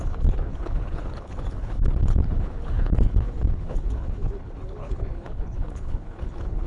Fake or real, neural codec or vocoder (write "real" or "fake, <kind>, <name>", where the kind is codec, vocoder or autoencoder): fake, codec, HILCodec